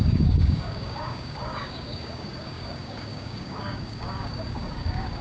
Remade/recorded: remade